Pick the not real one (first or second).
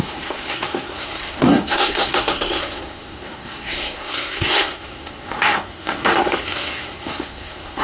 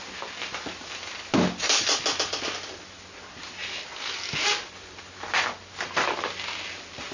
first